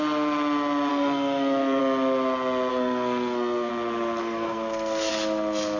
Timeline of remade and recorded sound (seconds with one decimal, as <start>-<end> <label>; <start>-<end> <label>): 0.0-0.9 recorded; 0.9-1.8 remade; 1.8-2.7 recorded; 2.7-3.7 remade; 3.7-4.2 recorded; 4.2-5.1 remade; 5.1-5.8 recorded